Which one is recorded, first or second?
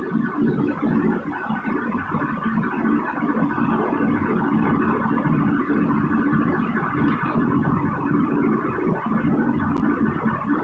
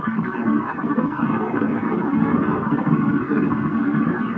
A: first